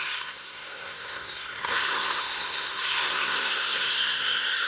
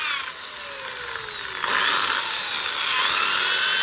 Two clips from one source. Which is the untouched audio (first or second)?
second